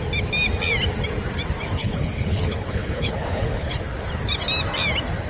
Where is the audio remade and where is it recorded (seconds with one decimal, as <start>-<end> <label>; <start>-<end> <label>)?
0.0-1.8 recorded; 1.8-3.7 remade; 3.7-5.3 recorded